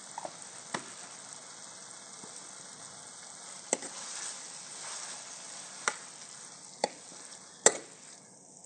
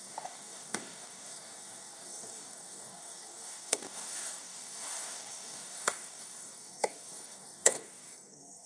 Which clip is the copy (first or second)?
second